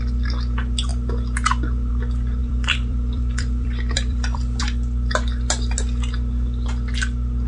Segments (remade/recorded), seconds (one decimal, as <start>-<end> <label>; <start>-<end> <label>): 0.0-2.4 recorded; 2.4-4.6 remade; 4.6-7.5 recorded